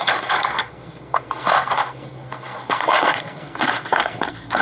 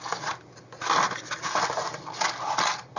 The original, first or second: second